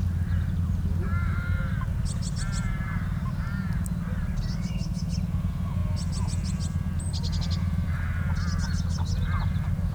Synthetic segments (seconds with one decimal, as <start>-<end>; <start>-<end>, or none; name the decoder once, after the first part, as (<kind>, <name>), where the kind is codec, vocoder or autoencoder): none

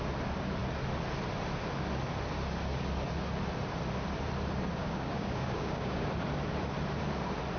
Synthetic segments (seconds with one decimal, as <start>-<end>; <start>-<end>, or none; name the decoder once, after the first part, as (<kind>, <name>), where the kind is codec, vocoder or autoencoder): 4.8-6.1 (codec, DAC)

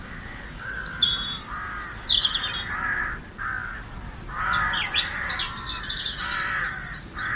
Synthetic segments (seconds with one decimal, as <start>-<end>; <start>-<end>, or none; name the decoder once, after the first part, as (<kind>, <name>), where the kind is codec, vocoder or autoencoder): 0.0-0.8 (codec, DAC)

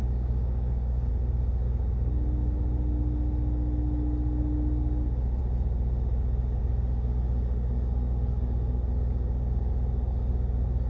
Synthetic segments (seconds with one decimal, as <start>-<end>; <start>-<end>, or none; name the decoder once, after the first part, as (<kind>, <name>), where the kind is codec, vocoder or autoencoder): 0.0-1.1 (codec, DAC)

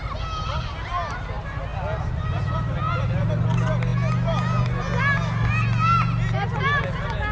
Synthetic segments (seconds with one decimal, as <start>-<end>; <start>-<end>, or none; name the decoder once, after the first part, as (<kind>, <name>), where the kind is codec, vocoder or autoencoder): none

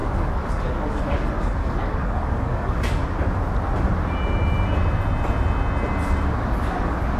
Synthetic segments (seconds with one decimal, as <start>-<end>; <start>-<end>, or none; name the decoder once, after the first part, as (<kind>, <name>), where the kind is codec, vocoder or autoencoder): 0.0-3.0 (codec, DAC); 6.3-7.2

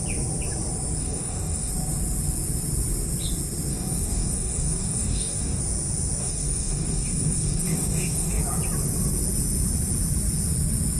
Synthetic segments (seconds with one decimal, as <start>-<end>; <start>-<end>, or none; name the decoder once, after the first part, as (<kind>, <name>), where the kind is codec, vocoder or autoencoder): 1.0-1.7 (codec, DAC); 3.7-5.6; 6.2-8.4